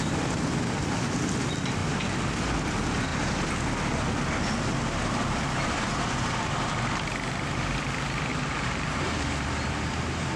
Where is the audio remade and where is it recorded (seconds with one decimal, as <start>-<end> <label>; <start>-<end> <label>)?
0.0-8.3 recorded; 8.3-9.3 remade; 9.3-10.4 recorded